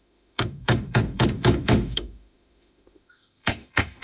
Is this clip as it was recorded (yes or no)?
no